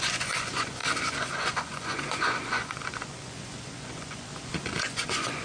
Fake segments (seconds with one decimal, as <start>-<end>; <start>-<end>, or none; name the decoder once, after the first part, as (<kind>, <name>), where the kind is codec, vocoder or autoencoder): 0.0-4.3 (vocoder, Vocos); 4.8-5.4